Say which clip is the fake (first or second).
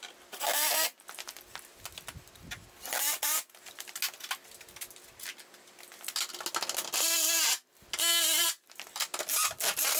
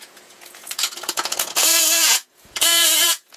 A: second